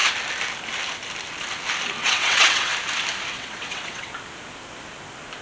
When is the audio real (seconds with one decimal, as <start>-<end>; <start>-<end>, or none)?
0.0-2.0; 2.7-3.3; 4.1-5.4